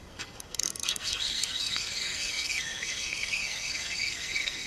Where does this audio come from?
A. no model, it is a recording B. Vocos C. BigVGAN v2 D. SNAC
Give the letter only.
D